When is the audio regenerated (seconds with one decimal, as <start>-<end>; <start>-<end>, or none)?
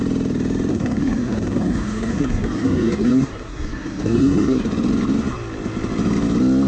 0.7-4.7